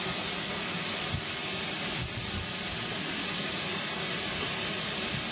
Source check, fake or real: real